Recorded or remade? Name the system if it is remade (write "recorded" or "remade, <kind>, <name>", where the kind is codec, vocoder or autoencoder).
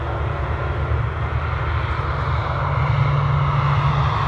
recorded